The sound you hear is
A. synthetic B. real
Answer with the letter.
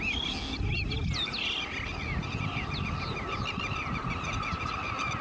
B